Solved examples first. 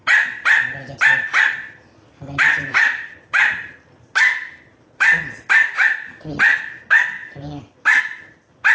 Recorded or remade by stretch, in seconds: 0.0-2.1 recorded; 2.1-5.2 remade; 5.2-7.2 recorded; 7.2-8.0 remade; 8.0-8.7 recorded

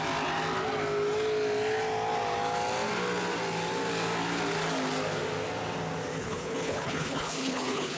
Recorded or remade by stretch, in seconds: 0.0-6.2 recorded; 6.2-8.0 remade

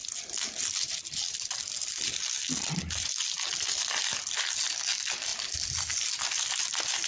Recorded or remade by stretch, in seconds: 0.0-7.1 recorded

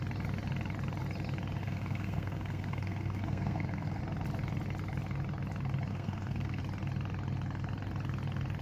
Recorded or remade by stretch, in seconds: 0.0-1.6 recorded; 1.6-4.0 remade; 4.0-5.9 recorded; 5.9-6.6 remade; 6.6-8.6 recorded